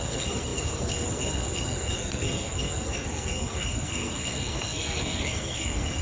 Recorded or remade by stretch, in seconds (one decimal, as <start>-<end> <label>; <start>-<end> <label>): 0.0-6.0 remade